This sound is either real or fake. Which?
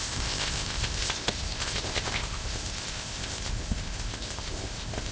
fake